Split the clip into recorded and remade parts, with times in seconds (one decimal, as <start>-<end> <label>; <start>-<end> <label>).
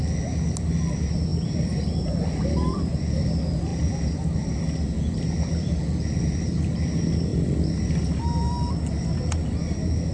0.0-1.3 recorded; 1.3-3.0 remade; 3.0-7.3 recorded; 7.3-7.9 remade; 7.9-10.1 recorded